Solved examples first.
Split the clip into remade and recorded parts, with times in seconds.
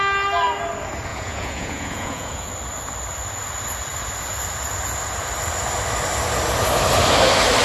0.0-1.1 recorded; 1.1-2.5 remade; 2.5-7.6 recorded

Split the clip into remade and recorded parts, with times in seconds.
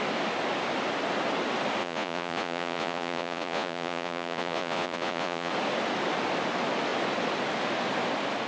0.0-1.8 recorded; 1.8-5.5 remade; 5.5-8.5 recorded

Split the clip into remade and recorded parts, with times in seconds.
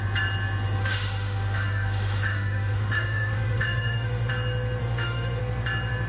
0.0-0.8 recorded; 0.8-4.3 remade; 4.3-4.8 recorded; 4.8-5.4 remade; 5.4-6.1 recorded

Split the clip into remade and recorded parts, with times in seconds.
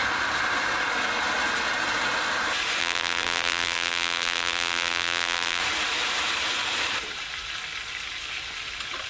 0.0-2.8 recorded; 2.8-5.6 remade; 5.6-9.1 recorded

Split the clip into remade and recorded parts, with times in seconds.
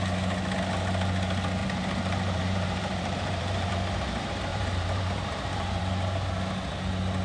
0.0-1.6 recorded; 1.6-3.7 remade; 3.7-4.5 recorded; 4.5-5.8 remade; 5.8-7.2 recorded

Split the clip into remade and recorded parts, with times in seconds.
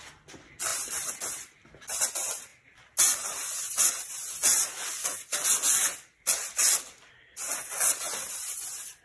0.0-9.0 recorded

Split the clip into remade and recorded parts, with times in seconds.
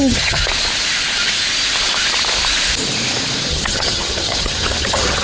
0.0-0.4 remade; 0.4-3.5 recorded; 3.5-5.2 remade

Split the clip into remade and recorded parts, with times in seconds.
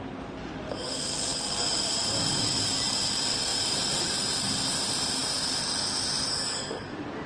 0.0-7.3 recorded